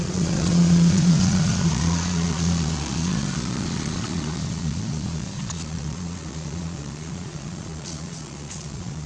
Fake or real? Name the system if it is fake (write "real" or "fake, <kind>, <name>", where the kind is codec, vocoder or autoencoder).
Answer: fake, vocoder, Vocos